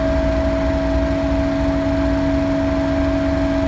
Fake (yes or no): no